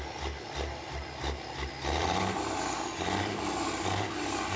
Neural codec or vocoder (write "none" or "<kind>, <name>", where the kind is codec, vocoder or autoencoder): none